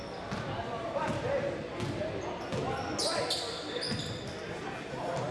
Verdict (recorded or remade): recorded